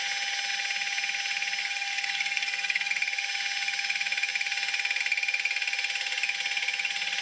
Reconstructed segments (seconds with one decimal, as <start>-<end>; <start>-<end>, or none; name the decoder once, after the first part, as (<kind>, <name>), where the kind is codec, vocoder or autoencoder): 1.6-2.9 (codec, SNAC)